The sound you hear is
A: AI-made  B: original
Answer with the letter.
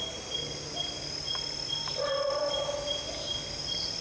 B